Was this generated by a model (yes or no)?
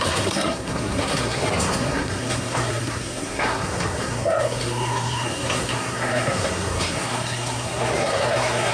yes